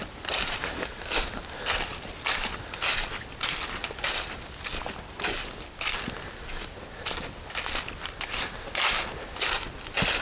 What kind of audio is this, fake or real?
real